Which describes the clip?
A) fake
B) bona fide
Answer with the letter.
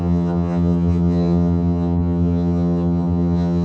A